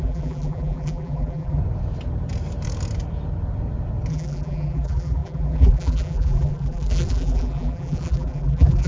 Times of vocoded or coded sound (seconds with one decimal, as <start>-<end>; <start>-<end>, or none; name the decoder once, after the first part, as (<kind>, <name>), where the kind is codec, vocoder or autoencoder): 0.0-1.6 (vocoder, BigVGAN v2); 4.1-8.9